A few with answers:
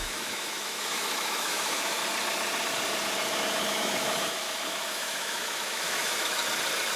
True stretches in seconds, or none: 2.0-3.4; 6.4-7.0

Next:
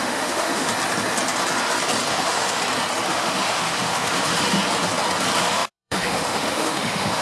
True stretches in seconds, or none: 0.7-2.1; 2.6-3.1; 4.6-5.4

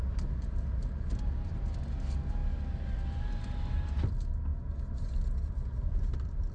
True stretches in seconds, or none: 0.0-6.5